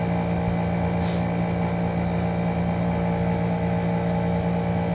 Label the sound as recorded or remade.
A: recorded